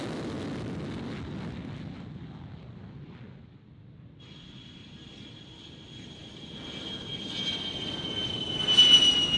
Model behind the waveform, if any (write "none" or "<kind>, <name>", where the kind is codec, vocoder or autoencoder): none